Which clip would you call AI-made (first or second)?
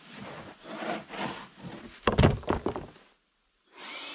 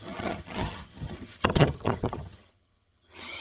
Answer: second